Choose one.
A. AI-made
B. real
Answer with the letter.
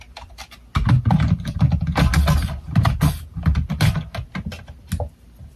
B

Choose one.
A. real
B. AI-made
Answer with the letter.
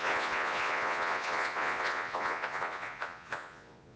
B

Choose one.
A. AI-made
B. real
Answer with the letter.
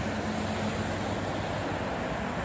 B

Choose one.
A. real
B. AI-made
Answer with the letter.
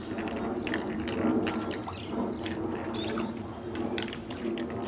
A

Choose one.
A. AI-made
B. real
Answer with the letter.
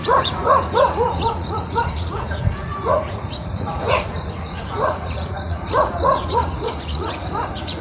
A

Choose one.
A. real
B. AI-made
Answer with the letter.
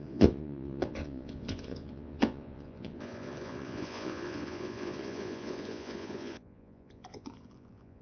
B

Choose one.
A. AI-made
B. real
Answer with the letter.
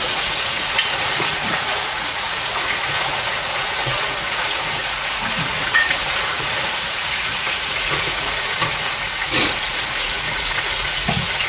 A